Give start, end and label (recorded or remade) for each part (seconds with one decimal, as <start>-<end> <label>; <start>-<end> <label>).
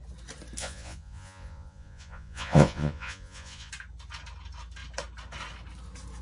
0.0-0.6 recorded; 0.6-3.7 remade; 3.7-6.2 recorded